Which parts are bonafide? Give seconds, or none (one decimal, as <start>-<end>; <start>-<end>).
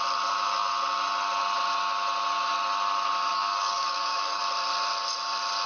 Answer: 0.0-3.3; 4.4-5.7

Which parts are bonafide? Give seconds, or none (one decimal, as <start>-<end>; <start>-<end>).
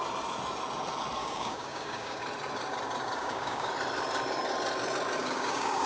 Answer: 0.0-1.2; 2.2-3.2; 3.7-5.2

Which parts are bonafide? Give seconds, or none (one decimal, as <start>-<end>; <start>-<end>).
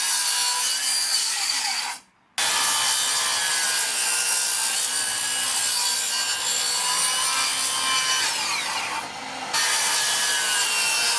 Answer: 0.0-1.2; 1.8-11.2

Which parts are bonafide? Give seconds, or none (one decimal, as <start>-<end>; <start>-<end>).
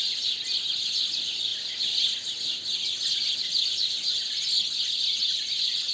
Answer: 0.0-5.9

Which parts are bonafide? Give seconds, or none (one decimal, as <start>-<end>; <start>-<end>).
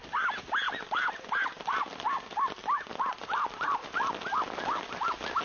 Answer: 0.0-5.4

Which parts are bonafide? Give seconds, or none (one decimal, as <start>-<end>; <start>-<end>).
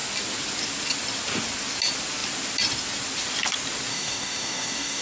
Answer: 0.0-3.9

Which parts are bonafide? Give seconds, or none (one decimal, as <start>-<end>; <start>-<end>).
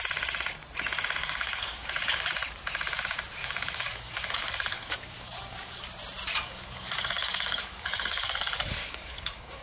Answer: 0.0-1.2; 2.3-3.4; 5.8-6.3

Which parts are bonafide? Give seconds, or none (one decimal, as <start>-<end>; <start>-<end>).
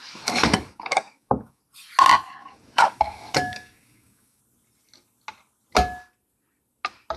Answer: 1.6-2.4; 4.4-7.2